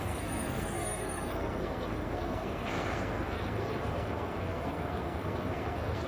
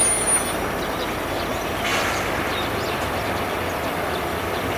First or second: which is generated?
first